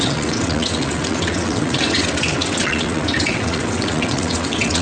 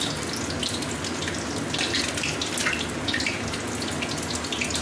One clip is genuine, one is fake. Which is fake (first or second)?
first